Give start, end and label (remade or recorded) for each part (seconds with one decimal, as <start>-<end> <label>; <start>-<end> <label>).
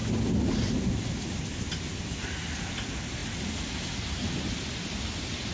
0.0-5.5 recorded